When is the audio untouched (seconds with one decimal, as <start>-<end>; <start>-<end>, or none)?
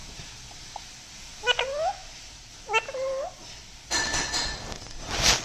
0.0-2.0; 2.5-5.4